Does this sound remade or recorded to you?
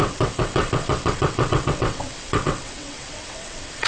remade